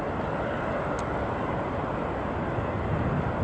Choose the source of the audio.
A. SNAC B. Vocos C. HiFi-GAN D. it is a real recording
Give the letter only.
D